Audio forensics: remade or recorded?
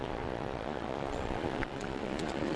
remade